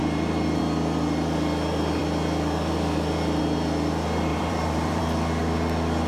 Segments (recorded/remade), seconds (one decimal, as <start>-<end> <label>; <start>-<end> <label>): 0.0-0.6 remade; 0.6-4.3 recorded; 4.3-5.0 remade; 5.0-6.1 recorded